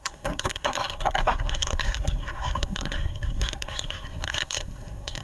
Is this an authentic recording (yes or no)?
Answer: no